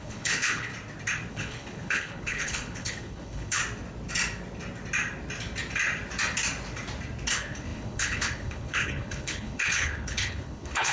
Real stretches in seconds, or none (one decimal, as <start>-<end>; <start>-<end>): 0.7-1.3; 3.6-7.3